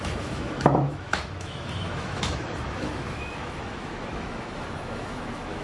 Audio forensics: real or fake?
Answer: fake